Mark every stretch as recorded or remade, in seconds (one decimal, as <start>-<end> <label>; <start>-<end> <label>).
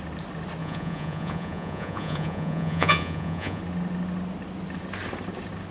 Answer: 0.0-0.6 recorded; 0.6-3.6 remade; 3.6-5.7 recorded